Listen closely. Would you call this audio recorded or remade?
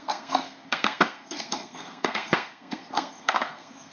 remade